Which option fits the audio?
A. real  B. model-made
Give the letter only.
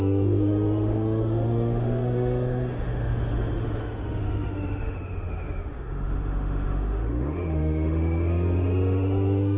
B